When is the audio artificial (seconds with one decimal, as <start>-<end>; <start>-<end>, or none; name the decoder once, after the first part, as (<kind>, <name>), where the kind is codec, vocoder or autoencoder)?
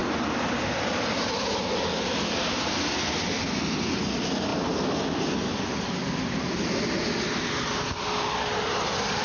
none